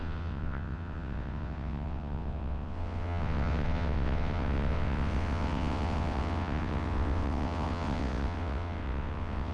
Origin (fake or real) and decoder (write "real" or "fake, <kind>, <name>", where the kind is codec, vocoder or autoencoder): fake, vocoder, WaveNeXt